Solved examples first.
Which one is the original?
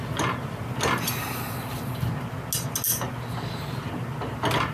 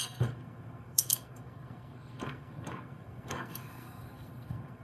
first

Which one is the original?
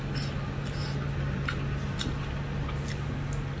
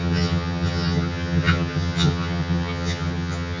first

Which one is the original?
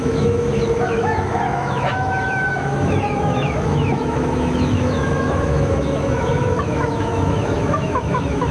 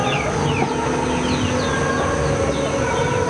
second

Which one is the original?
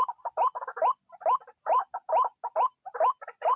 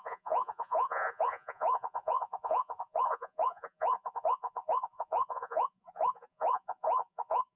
first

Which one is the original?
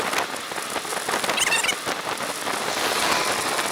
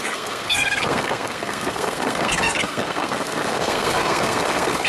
first